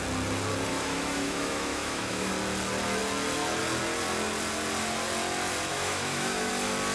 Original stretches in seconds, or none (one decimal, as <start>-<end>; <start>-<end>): 0.0-0.7; 2.3-5.7; 6.5-6.9